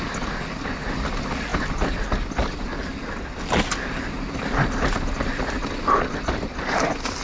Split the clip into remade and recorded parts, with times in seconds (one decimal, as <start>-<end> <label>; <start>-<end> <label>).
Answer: 0.0-7.2 recorded